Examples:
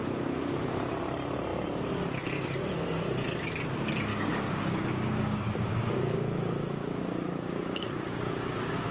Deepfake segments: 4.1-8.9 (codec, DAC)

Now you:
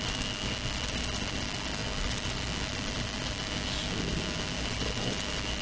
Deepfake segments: none

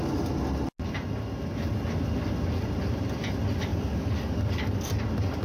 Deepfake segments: 3.7-4.9 (codec, DAC)

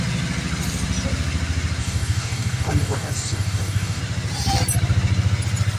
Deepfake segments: 1.8-4.0 (codec, DAC)

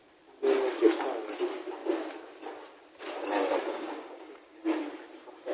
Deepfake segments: 3.6-4.6 (codec, DAC)

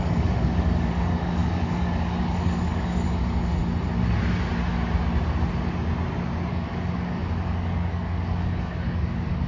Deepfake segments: 0.0-3.6 (codec, DAC); 6.5-9.5

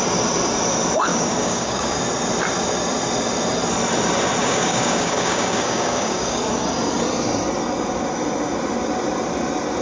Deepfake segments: 1.1-2.0 (codec, DAC); 4.4-6.4

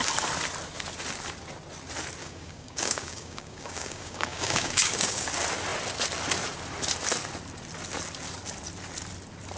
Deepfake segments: 2.2-5.3 (codec, DAC)